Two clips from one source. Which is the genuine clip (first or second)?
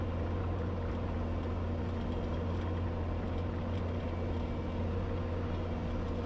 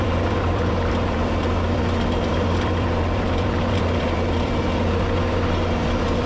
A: first